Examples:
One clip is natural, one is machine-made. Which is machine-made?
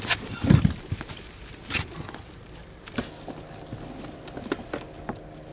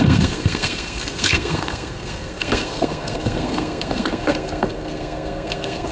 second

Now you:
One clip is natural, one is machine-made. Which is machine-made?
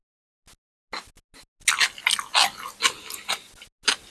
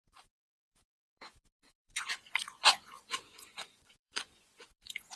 second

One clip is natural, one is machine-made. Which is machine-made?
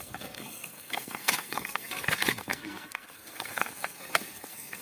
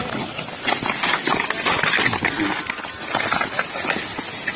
first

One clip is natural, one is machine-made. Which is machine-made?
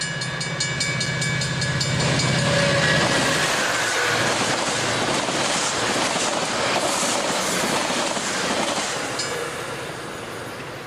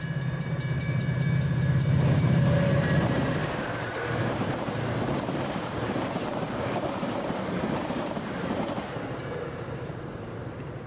second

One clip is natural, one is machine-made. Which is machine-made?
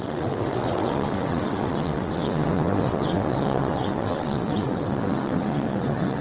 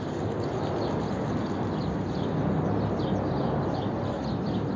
first